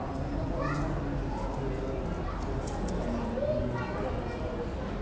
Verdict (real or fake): real